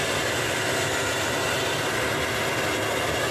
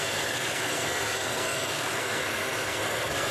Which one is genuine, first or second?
first